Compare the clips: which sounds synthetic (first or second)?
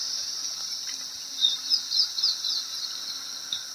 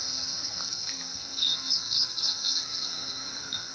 second